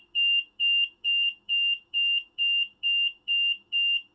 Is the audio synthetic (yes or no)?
yes